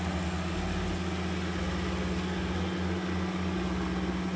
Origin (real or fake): real